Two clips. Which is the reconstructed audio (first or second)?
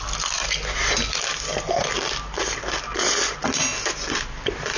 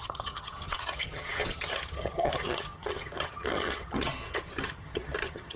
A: second